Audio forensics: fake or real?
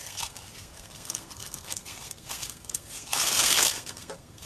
fake